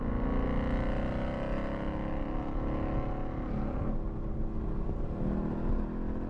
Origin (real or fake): real